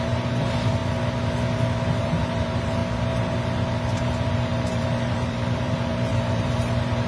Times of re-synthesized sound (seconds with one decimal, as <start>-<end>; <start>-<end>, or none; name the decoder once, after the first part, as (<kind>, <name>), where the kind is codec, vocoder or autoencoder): 0.0-0.8 (vocoder, BigVGAN v2); 2.0-2.8; 4.0-7.1